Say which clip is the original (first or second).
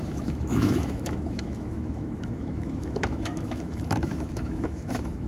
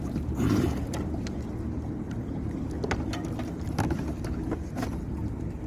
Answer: second